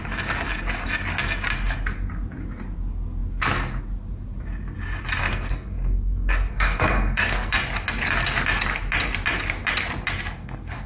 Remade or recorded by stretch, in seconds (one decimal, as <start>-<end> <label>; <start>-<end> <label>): 0.0-5.2 recorded; 5.2-7.5 remade; 7.5-10.4 recorded; 10.4-10.9 remade